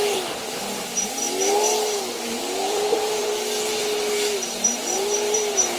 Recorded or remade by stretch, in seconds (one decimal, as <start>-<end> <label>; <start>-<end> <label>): 0.0-0.6 remade; 0.6-2.1 recorded; 2.1-3.3 remade; 3.3-3.8 recorded; 3.8-5.8 remade